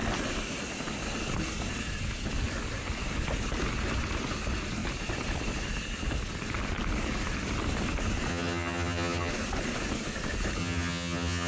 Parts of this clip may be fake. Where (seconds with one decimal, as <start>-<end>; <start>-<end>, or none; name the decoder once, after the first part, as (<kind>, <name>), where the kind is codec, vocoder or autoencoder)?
8.3-9.3 (vocoder, HiFi-GAN); 10.6-11.5